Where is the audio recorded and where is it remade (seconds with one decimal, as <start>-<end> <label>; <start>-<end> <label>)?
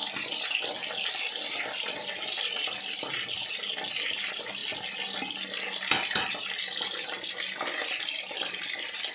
0.0-9.1 recorded